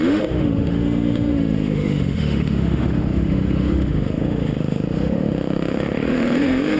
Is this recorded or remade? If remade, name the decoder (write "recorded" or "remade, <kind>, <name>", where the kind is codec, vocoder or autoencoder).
remade, autoencoder, DAC-VAE